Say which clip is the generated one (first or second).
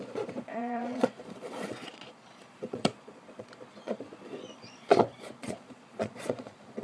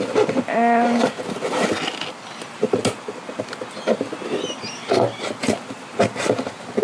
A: first